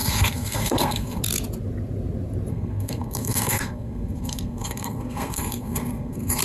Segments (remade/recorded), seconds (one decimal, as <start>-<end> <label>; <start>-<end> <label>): 0.0-1.2 remade; 1.2-2.5 recorded; 2.5-6.4 remade